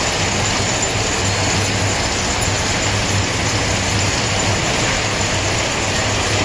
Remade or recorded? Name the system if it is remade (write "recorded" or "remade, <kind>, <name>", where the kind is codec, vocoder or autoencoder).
recorded